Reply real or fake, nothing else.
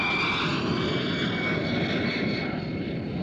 real